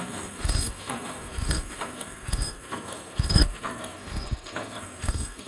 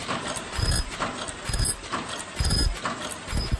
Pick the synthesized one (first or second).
first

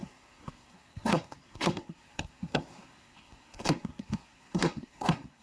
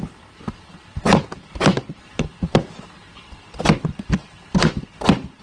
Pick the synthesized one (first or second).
first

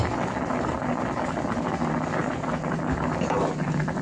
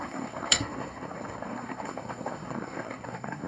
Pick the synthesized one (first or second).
second